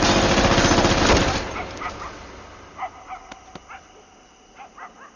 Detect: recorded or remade recorded